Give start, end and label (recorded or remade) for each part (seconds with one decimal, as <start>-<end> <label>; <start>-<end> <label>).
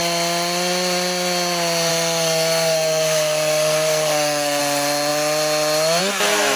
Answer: 0.0-1.9 recorded; 1.9-4.6 remade; 4.6-6.6 recorded